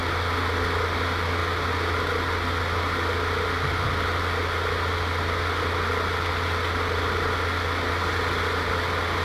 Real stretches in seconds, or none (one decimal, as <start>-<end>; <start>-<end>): 0.0-9.2